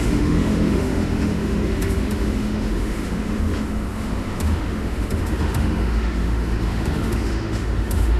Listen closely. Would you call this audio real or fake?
fake